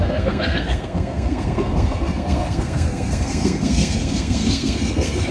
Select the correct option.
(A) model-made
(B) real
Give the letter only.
A